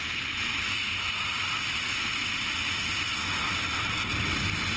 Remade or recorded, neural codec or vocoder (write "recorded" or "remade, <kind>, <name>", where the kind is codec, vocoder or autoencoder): recorded